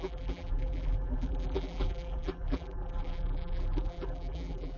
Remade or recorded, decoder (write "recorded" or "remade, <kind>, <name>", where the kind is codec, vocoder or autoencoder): remade, vocoder, BigVGAN v2